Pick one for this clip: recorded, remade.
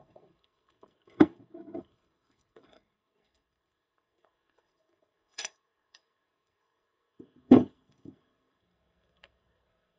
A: remade